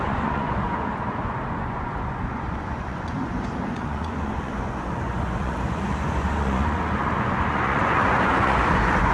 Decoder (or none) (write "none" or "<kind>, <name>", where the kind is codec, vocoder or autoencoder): vocoder, Vocos